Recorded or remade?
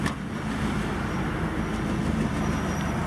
recorded